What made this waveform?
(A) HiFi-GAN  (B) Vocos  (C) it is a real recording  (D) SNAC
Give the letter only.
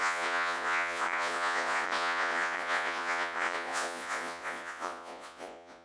B